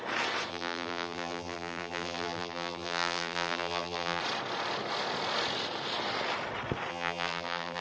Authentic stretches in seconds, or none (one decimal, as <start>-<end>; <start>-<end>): 0.0-0.5; 4.2-6.9